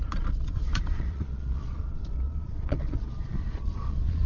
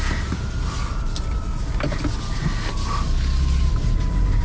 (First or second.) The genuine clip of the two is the second